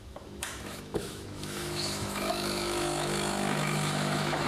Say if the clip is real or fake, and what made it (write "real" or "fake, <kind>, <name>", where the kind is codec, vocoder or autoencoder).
fake, autoencoder, DAC-VAE